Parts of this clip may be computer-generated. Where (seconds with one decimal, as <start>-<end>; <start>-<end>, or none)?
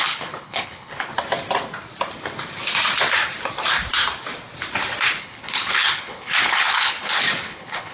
0.0-1.1; 5.2-7.9